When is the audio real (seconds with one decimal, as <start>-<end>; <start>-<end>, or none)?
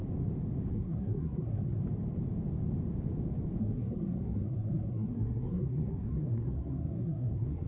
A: 0.0-0.7; 1.8-3.6